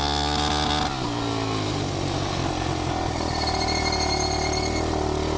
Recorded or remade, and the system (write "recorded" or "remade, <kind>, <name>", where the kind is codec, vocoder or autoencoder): recorded